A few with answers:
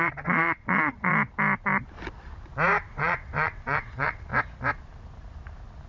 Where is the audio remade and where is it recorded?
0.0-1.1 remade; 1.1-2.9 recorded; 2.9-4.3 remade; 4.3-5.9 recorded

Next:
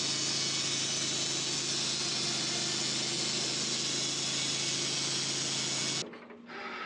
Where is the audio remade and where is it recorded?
0.0-6.9 recorded

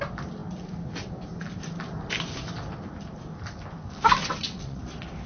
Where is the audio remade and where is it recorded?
0.0-4.2 recorded; 4.2-4.8 remade; 4.8-5.3 recorded

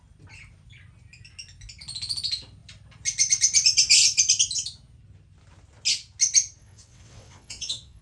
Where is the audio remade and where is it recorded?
0.0-6.6 recorded; 6.6-8.0 remade

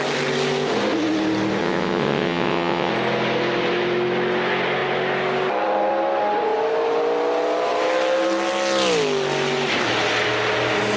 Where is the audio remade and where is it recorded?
0.0-1.6 recorded; 1.6-2.9 remade; 2.9-11.0 recorded

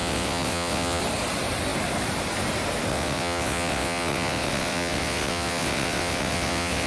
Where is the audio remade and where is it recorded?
0.0-1.0 remade; 1.0-2.9 recorded; 2.9-6.9 remade

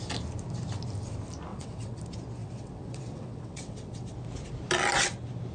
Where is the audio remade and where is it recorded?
0.0-1.5 recorded; 1.5-2.0 remade; 2.0-2.4 recorded; 2.4-4.1 remade; 4.1-5.5 recorded